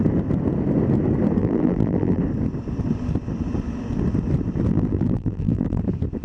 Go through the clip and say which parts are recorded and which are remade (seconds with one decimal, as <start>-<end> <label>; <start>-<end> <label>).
0.0-1.4 recorded; 1.4-2.2 remade; 2.2-4.7 recorded; 4.7-5.8 remade; 5.8-6.2 recorded